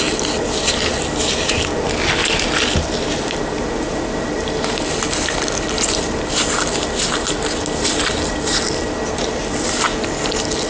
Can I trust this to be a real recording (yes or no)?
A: yes